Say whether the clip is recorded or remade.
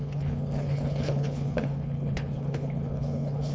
remade